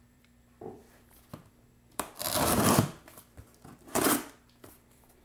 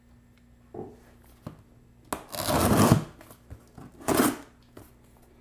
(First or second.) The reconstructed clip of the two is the first